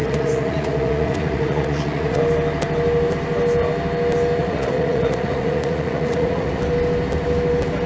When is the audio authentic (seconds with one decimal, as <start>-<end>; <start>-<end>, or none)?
2.2-4.4; 6.6-7.9